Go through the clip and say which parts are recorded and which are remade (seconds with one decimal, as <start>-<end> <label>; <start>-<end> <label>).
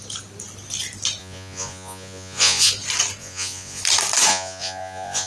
0.0-1.2 recorded; 1.2-2.7 remade; 2.7-3.2 recorded; 3.2-3.8 remade; 3.8-4.3 recorded; 4.3-5.3 remade